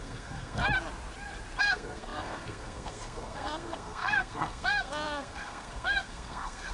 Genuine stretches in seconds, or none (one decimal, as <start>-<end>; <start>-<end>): 0.6-1.6